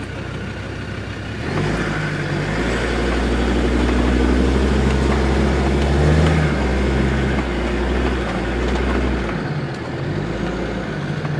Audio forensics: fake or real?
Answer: real